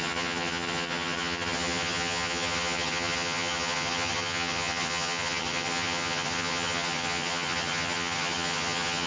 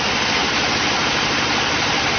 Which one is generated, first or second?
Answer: first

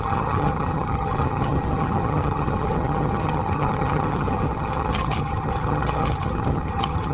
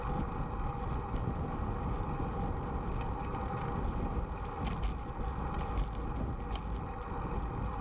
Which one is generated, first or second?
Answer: first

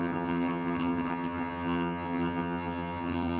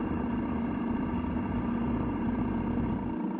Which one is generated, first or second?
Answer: first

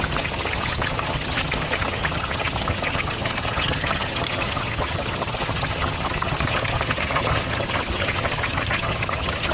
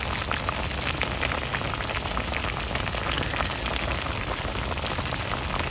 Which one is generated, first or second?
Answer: first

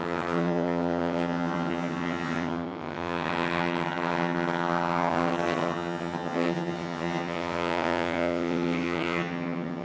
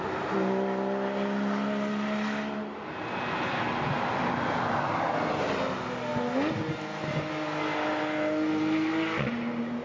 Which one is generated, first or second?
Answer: first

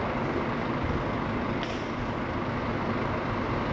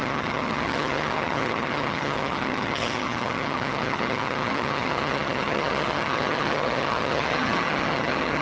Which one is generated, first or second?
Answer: second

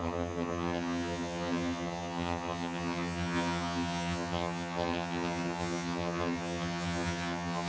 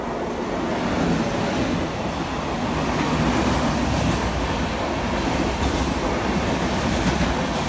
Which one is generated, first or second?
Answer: first